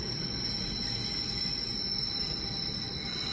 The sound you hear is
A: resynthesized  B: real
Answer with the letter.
B